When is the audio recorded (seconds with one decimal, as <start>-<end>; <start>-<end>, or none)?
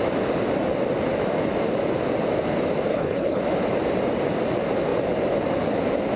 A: 0.0-2.9; 3.4-6.2